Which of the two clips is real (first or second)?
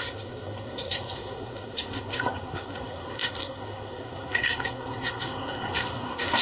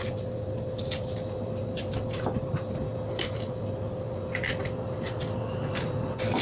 second